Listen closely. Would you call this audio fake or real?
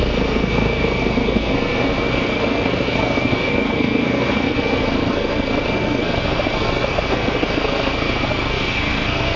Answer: fake